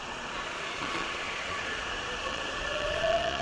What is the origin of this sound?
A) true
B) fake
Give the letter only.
B